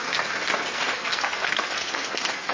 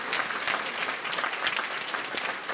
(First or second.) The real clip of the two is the second